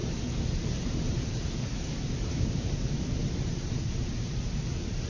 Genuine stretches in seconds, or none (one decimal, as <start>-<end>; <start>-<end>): none